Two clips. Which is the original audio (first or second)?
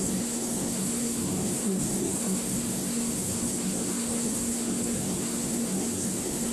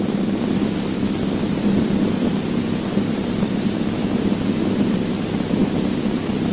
second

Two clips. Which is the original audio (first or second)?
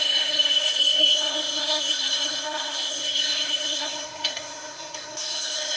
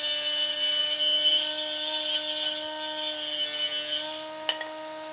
second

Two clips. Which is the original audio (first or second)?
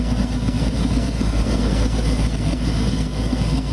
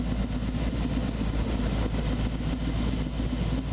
second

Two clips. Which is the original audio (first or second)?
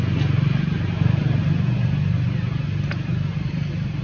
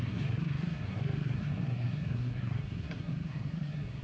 first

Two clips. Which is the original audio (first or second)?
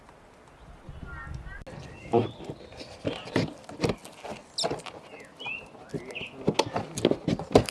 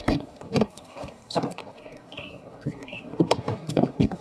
first